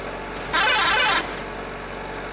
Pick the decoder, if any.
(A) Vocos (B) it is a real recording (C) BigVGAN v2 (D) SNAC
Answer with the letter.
B